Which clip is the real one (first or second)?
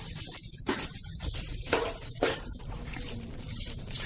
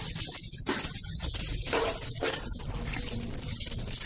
second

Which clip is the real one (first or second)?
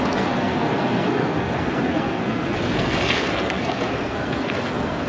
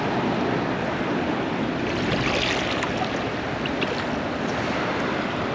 second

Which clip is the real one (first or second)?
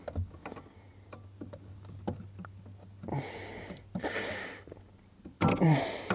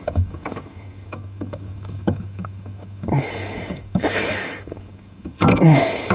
first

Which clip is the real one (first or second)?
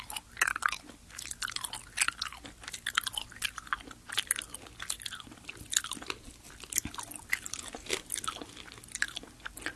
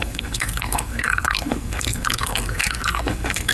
first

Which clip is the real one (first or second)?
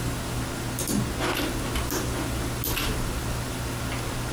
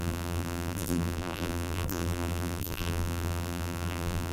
first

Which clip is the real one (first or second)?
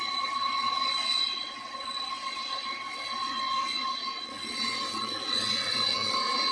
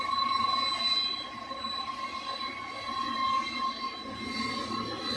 second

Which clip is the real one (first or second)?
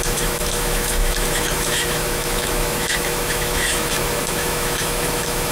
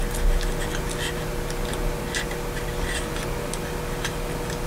second